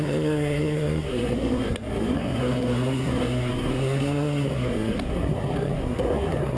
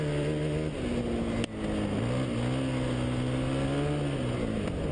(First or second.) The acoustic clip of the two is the second